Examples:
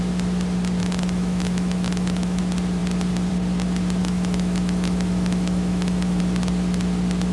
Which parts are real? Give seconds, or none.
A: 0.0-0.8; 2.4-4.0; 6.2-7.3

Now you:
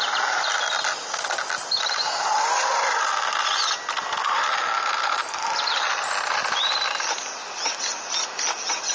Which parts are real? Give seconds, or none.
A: 0.0-8.9

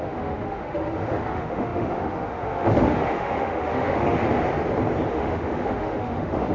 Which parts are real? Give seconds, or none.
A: 4.2-5.1